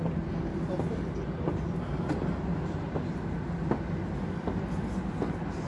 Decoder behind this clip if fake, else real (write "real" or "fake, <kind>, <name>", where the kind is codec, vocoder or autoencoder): real